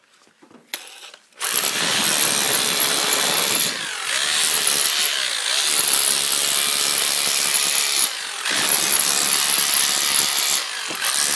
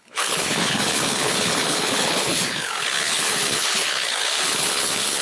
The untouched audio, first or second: first